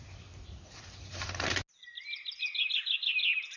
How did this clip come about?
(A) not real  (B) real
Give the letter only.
B